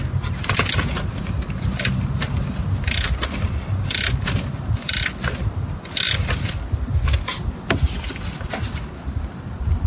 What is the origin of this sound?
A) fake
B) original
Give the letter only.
B